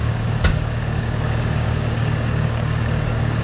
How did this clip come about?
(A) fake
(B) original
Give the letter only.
A